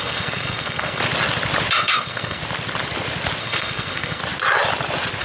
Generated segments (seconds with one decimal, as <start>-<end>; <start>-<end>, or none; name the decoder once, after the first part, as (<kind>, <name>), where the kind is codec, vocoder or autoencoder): 0.0-1.0 (codec, SNAC); 1.7-2.4; 3.4-4.2